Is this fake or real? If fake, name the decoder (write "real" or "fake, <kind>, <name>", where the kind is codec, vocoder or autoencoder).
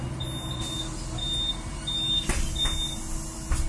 real